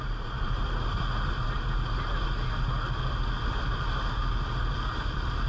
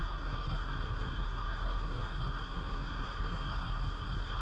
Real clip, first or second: first